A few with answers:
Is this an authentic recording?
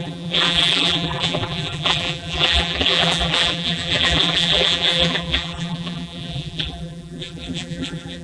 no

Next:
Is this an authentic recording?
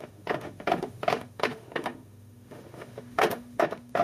no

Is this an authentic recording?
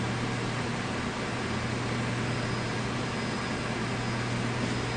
yes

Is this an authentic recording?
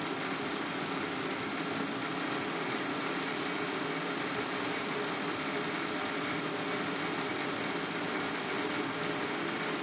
no